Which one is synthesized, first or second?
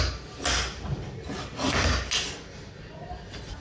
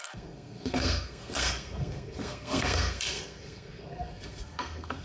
second